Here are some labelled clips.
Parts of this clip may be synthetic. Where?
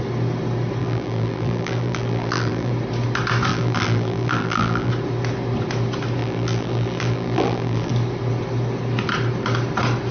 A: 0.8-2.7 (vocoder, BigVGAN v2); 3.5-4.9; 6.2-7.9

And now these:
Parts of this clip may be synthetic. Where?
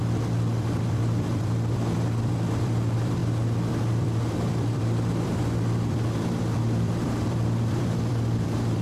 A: 0.0-3.2 (vocoder, BigVGAN v2); 3.7-8.8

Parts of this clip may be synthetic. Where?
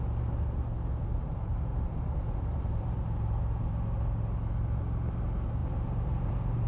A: 1.1-3.4 (vocoder, BigVGAN v2); 5.6-6.7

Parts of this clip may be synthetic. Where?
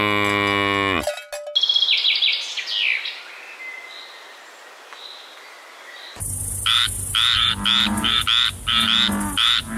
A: none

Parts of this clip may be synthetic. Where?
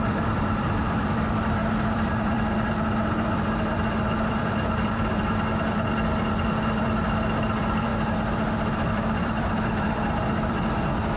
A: 0.0-7.9 (vocoder, BigVGAN v2); 8.9-11.2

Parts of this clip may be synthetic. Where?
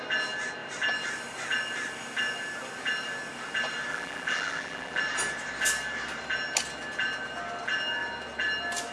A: 3.9-5.0 (vocoder, BigVGAN v2)